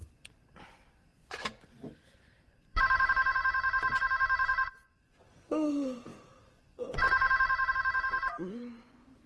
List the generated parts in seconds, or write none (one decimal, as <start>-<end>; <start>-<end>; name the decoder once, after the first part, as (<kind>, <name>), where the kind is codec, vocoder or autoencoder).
0.0-9.3 (vocoder, Vocos)